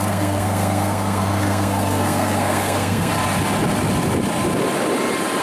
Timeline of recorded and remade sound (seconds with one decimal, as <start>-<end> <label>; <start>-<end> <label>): 0.0-3.1 remade; 3.1-5.4 recorded